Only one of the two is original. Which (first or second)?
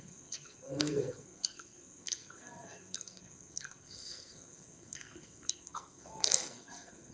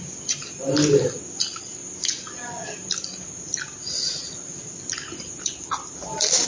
second